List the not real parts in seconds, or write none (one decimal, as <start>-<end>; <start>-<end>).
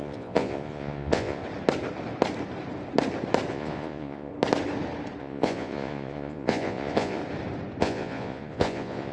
0.0-1.4; 3.5-4.3; 5.2-7.2; 7.8-9.1